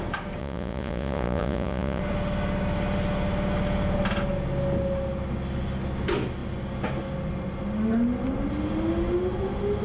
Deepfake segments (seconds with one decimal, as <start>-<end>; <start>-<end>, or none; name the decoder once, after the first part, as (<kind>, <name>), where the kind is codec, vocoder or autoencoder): 0.4-2.0 (vocoder, Vocos)